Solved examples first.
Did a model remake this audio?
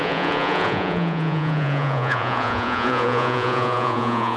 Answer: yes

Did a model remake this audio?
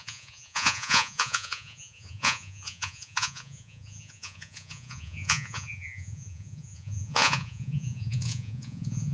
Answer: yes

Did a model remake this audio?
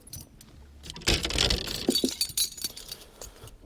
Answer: no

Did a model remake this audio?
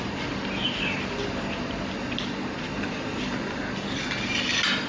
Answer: no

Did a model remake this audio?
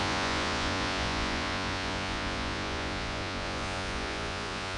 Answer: yes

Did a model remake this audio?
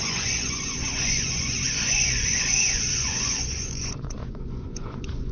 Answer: yes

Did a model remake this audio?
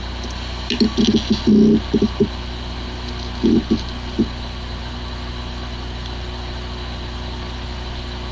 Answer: no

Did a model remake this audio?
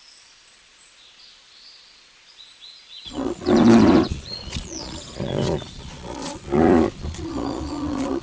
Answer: yes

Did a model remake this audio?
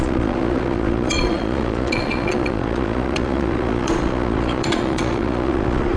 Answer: yes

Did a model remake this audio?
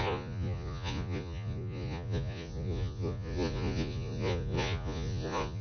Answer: yes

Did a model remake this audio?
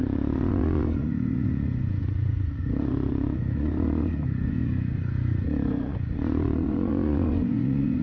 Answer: yes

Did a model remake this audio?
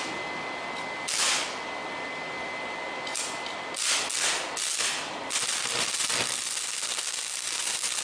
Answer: no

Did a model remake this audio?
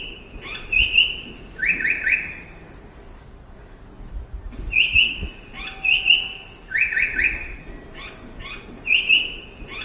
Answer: no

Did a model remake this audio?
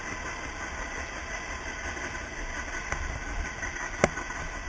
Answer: no